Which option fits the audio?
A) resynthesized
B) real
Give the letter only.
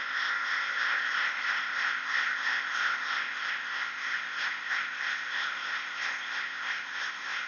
A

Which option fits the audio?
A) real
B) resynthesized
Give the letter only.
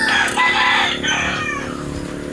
A